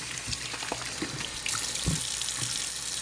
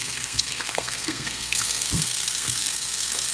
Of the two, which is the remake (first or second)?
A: second